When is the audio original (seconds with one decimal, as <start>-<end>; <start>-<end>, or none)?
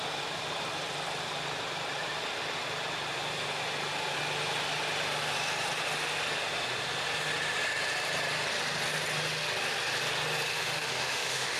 0.0-10.5